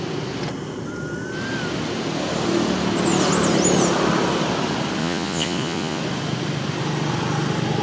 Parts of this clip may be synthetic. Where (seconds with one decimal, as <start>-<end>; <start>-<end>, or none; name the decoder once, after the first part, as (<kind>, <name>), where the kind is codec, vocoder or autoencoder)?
5.0-6.0 (vocoder, Vocos)